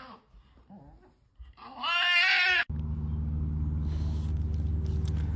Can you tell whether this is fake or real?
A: real